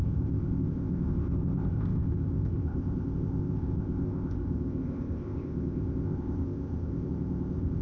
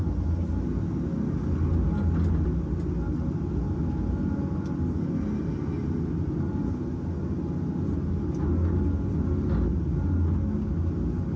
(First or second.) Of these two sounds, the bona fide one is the second